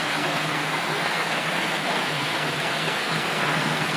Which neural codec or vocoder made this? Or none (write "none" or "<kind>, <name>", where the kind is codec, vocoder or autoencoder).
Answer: codec, SNAC